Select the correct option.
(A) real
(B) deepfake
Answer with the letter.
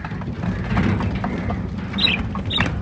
A